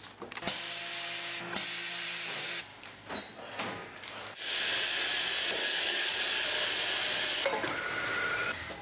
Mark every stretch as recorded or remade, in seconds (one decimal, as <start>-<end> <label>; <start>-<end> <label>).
0.0-5.6 recorded; 5.6-6.2 remade; 6.2-8.8 recorded